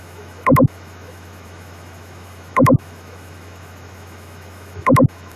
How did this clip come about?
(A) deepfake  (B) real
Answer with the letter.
A